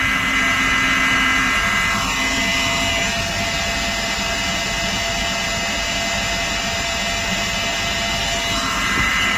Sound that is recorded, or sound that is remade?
recorded